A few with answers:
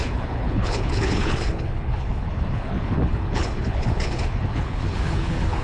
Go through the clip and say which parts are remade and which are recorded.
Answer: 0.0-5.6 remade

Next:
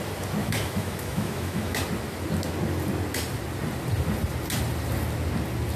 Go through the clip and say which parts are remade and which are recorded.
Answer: 0.0-0.4 recorded; 0.4-1.8 remade; 1.8-5.8 recorded

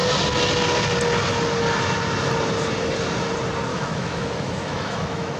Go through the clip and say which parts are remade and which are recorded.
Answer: 0.0-3.7 recorded; 3.7-5.4 remade

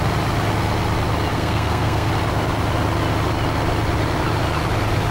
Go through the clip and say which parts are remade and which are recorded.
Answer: 0.0-1.3 recorded; 1.3-2.1 remade; 2.1-5.1 recorded